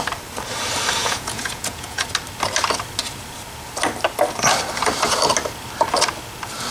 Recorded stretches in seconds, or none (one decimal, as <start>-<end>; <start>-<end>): 0.0-1.0; 2.0-6.7